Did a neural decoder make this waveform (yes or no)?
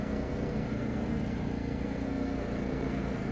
yes